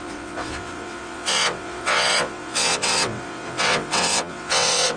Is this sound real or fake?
fake